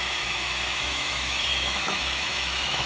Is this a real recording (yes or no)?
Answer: no